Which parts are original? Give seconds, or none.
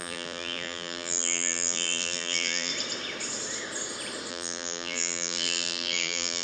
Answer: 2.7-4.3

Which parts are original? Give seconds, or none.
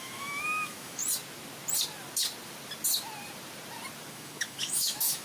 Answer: 1.0-4.1